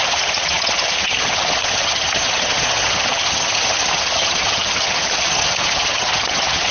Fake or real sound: fake